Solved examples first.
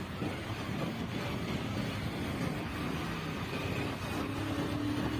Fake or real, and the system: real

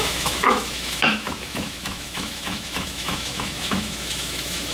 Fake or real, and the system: fake, autoencoder, DAC-VAE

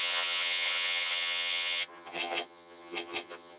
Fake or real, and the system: fake, vocoder, HiFi-GAN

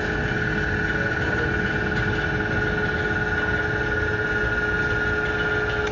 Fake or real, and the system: real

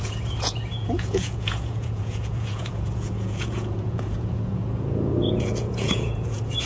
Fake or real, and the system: fake, vocoder, Vocos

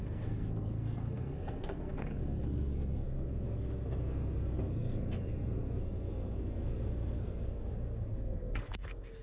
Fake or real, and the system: fake, codec, SNAC